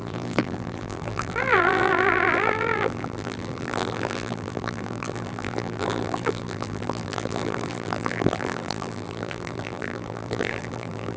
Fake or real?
fake